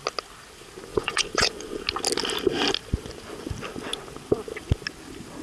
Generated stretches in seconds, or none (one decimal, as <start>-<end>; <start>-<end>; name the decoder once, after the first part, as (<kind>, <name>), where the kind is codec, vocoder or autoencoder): 0.9-1.8 (vocoder, Vocos)